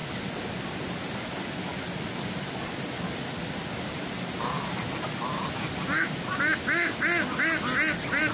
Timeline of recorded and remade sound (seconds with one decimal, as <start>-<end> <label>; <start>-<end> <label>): 0.0-8.3 recorded